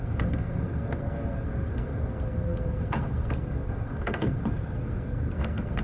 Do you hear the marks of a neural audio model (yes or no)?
yes